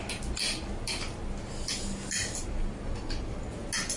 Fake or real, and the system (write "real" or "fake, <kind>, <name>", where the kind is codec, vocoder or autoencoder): real